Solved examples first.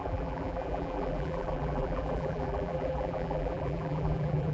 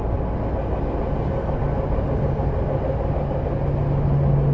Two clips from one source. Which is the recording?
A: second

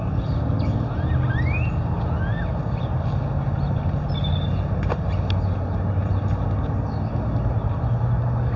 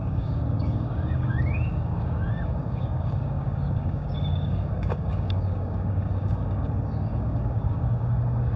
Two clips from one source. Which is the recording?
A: first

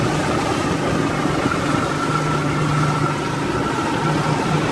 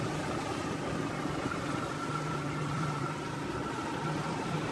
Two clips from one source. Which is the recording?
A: first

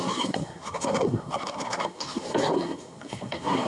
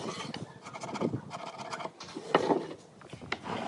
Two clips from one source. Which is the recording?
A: second